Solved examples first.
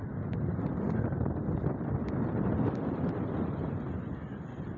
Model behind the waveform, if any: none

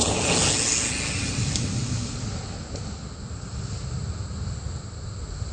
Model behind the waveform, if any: none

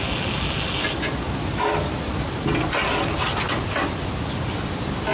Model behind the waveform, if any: none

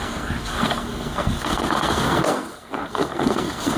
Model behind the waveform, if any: codec, SNAC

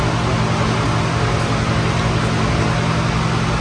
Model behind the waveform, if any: none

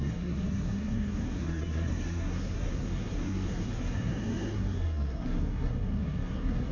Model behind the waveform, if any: codec, SNAC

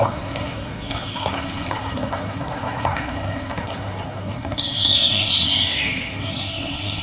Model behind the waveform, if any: codec, SNAC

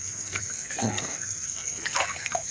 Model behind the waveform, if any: codec, SNAC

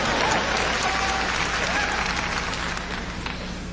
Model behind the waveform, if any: none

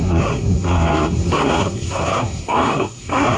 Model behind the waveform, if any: codec, SNAC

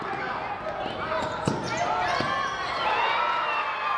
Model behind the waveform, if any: none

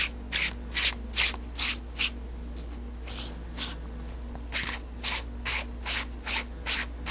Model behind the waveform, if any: none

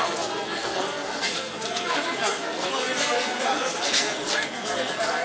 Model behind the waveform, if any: codec, SNAC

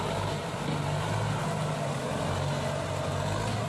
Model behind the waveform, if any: none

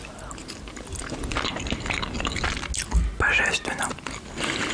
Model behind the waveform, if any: none